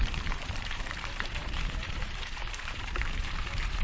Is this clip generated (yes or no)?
yes